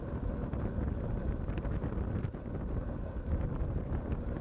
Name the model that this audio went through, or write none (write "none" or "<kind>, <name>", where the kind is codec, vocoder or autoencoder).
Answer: none